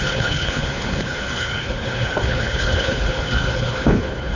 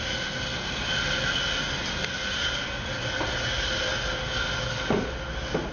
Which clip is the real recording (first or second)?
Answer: second